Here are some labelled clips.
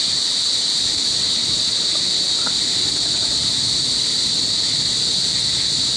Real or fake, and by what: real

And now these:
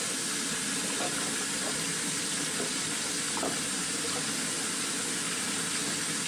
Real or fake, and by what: real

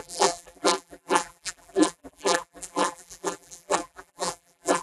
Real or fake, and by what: fake, vocoder, BigVGAN v2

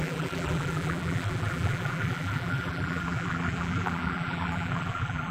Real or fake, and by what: fake, vocoder, BigVGAN v2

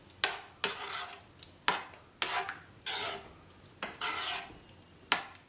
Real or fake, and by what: real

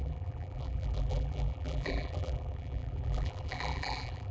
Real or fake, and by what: fake, vocoder, BigVGAN v2